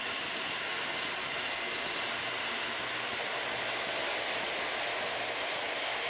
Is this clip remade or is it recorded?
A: recorded